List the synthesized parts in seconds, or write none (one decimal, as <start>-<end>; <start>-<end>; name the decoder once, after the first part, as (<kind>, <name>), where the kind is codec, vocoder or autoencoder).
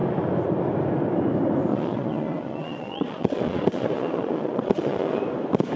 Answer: 1.7-5.2 (vocoder, Vocos)